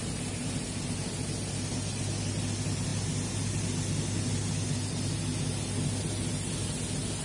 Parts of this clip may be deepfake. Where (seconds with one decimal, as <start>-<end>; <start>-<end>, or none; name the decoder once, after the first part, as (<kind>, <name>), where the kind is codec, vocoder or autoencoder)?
none